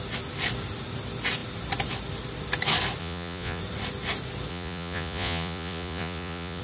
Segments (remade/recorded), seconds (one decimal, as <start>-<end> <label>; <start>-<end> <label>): 0.0-3.0 recorded; 3.0-3.6 remade; 3.6-4.5 recorded; 4.5-6.6 remade